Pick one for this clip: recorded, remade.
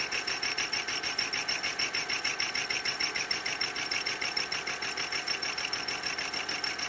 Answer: recorded